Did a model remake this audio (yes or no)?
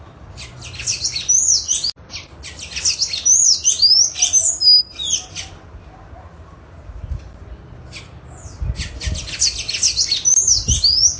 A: no